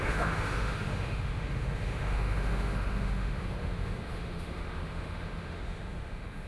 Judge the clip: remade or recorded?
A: remade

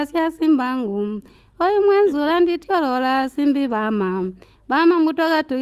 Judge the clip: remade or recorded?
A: remade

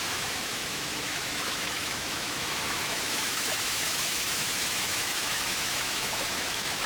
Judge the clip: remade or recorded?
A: remade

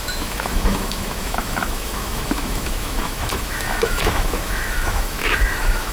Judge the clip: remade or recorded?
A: remade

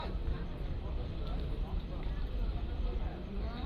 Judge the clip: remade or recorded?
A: recorded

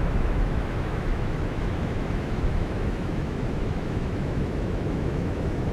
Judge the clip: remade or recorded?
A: remade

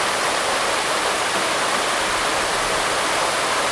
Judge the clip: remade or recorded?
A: recorded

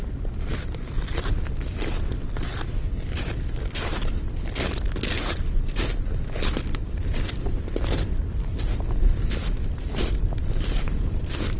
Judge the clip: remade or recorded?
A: recorded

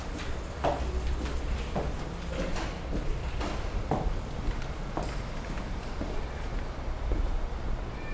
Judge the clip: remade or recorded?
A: recorded